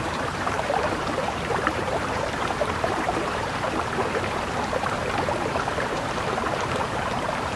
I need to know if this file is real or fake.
fake